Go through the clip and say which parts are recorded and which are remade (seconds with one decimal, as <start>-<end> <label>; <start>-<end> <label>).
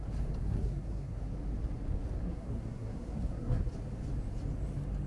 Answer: 0.0-0.4 recorded; 0.4-1.2 remade; 1.2-2.2 recorded; 2.2-3.7 remade; 3.7-5.1 recorded